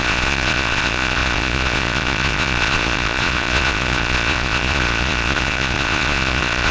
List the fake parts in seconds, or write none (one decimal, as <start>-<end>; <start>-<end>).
0.0-6.7